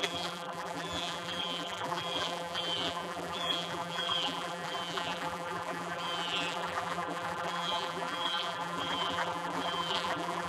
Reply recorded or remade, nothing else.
remade